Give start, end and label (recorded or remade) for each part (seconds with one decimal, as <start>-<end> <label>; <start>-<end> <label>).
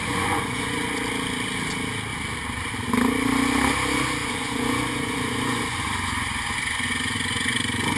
0.0-0.9 remade; 0.9-4.2 recorded; 4.2-8.0 remade